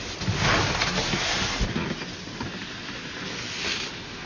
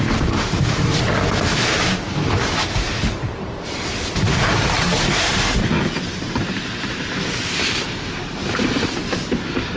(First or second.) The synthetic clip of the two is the second